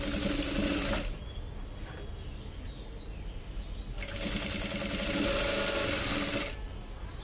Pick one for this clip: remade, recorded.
recorded